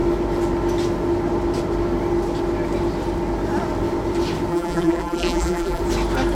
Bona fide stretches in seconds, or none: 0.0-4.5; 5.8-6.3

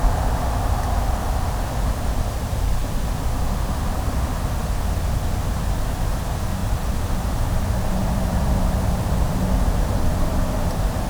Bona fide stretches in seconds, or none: 0.0-2.8; 4.6-6.6; 9.1-11.1

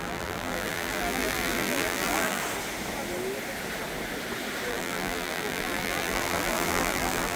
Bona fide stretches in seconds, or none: 2.4-4.7

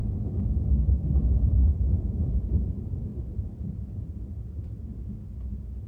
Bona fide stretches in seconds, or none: 0.0-2.1; 4.9-5.5

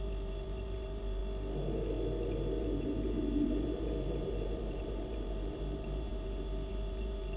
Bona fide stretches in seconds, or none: 1.2-2.6

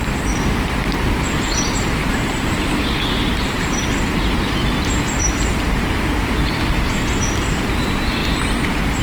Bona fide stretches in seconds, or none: 8.2-9.0